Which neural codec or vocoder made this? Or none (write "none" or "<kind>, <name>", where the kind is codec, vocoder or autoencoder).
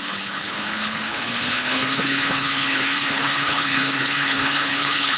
codec, HILCodec